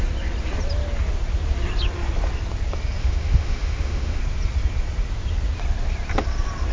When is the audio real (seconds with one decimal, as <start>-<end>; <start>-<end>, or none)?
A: 0.0-3.0; 4.2-6.7